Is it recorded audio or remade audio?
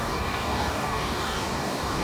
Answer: remade